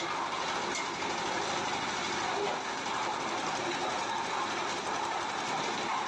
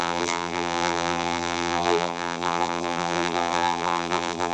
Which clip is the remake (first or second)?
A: second